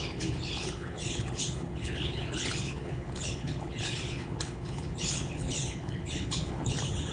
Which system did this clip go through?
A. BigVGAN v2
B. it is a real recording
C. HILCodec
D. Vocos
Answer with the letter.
C